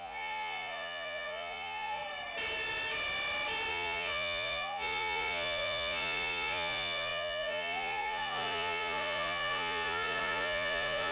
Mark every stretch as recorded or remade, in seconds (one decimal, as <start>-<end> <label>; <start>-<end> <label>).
0.0-2.0 remade; 2.0-3.7 recorded; 3.7-11.1 remade